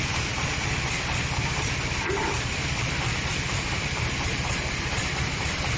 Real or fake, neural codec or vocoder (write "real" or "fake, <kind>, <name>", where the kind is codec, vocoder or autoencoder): fake, vocoder, BigVGAN v2